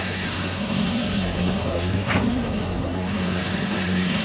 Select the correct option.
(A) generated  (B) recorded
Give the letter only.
A